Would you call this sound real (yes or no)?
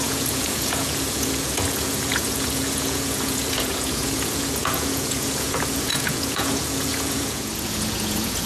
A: no